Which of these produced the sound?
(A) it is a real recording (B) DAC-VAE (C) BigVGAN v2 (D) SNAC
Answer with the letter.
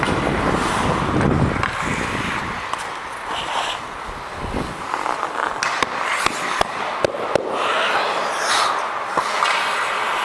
A